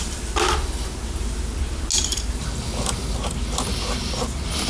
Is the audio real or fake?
real